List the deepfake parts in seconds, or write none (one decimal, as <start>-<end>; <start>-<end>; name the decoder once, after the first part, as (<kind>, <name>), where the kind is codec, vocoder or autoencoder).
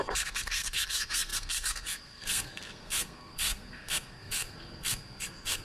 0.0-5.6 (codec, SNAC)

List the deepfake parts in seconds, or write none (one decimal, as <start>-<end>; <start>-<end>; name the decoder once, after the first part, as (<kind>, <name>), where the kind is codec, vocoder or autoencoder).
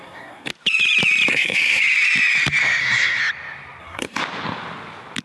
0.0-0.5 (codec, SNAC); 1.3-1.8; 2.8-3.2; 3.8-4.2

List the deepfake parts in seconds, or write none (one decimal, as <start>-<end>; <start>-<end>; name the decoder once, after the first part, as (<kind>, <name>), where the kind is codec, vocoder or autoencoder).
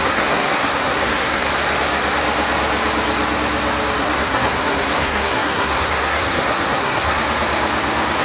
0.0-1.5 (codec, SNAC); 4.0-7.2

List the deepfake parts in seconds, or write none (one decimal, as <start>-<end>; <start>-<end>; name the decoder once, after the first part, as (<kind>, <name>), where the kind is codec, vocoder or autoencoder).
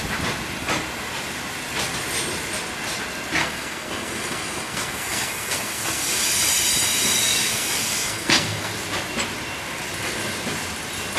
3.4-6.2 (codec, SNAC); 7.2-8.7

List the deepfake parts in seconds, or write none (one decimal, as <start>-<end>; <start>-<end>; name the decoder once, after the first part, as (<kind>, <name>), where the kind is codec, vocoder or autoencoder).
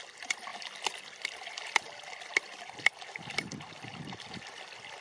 none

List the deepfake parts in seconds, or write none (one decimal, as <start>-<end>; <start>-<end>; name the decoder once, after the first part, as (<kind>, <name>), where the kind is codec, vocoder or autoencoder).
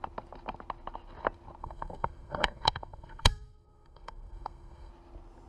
1.6-4.9 (codec, SNAC)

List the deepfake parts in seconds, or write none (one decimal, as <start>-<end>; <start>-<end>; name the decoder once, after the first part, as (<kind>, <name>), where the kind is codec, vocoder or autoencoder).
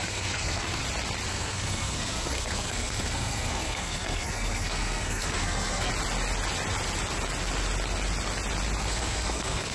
0.0-0.8 (codec, SNAC); 1.3-5.9; 8.8-9.7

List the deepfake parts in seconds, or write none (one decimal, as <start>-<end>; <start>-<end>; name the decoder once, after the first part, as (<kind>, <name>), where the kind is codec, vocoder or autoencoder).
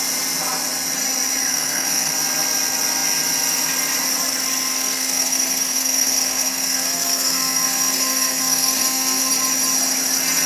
1.5-2.1 (codec, SNAC); 4.7-9.3